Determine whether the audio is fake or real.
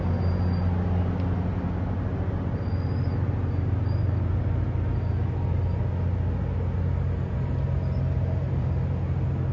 real